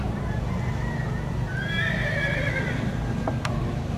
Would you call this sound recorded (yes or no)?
yes